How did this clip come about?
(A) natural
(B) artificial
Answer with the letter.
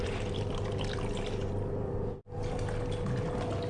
A